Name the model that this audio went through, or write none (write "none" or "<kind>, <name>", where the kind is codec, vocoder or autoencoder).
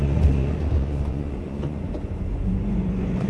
vocoder, Vocos